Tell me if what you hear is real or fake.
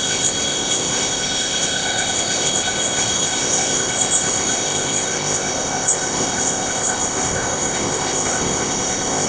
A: fake